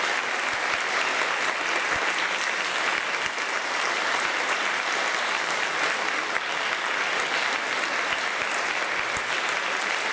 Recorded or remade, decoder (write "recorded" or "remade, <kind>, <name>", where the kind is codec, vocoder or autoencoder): recorded